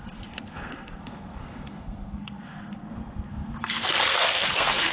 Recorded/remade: remade